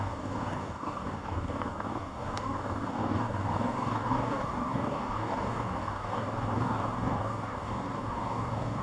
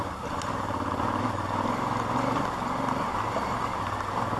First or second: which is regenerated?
first